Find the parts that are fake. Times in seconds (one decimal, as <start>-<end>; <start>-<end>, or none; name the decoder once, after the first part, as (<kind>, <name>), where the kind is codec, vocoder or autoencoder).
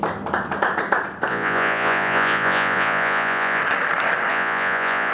1.3-3.6 (vocoder, Vocos); 4.3-5.1